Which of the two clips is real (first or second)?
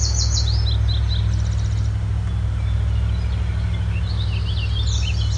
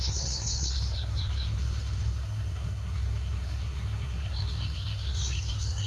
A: first